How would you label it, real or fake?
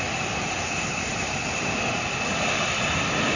real